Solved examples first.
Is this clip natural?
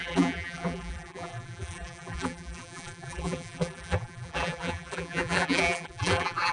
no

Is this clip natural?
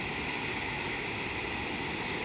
yes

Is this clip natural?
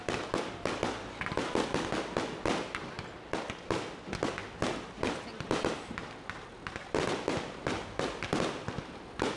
yes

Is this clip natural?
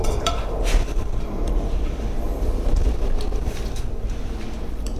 no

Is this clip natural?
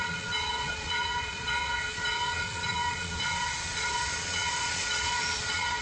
no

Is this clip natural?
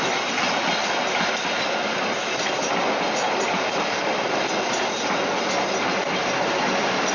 yes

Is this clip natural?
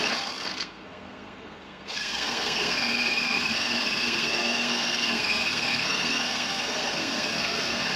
no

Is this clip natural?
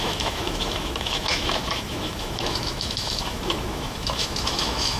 no